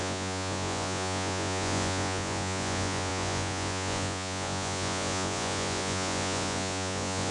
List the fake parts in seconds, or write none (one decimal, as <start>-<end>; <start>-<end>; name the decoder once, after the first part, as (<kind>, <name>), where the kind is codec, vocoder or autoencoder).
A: 0.0-7.3 (vocoder, Vocos)